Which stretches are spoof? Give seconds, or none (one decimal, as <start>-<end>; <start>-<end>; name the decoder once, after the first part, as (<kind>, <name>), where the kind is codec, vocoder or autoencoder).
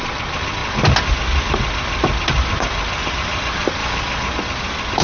none